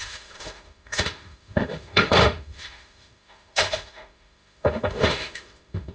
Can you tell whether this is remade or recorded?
remade